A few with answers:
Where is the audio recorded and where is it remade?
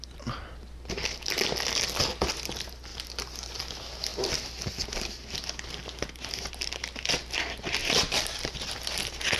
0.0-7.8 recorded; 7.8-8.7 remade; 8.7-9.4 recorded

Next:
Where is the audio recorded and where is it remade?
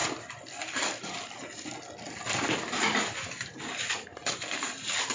0.0-5.1 remade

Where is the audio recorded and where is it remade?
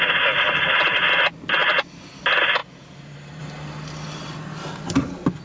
0.0-2.6 recorded; 2.6-3.4 remade; 3.4-5.4 recorded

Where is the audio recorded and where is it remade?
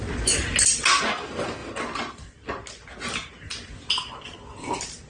0.0-5.1 recorded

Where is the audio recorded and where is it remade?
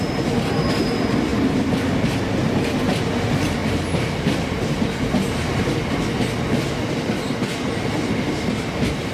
0.0-9.1 recorded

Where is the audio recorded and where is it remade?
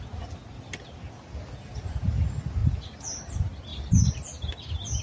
0.0-5.0 recorded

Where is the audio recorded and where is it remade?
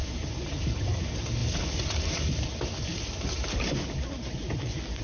0.0-0.8 remade; 0.8-1.4 recorded; 1.4-2.3 remade; 2.3-2.9 recorded; 2.9-4.0 remade; 4.0-5.0 recorded